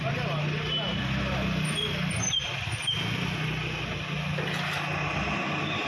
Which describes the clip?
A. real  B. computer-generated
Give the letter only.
A